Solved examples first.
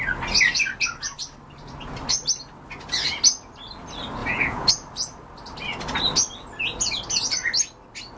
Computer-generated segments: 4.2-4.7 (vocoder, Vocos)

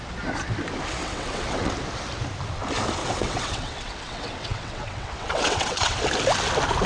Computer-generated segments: 1.0-1.7 (vocoder, WaveNeXt); 3.0-6.0

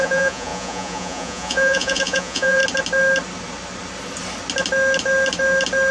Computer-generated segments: 0.0-2.6 (vocoder, Vocos)

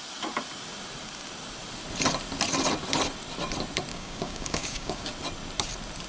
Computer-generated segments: 3.9-5.1 (codec, DAC)

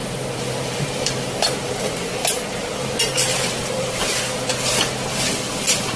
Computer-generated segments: 0.0-4.5 (vocoder, BigVGAN v2); 5.5-6.0

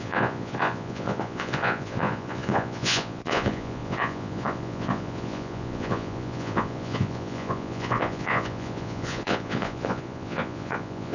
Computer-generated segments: 0.0-11.1 (vocoder, Vocos)

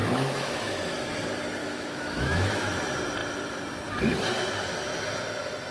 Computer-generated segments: 0.0-1.1 (autoencoder, DAC-VAE); 1.6-2.8

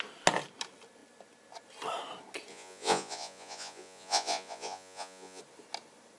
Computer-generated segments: 2.5-5.4 (vocoder, Vocos)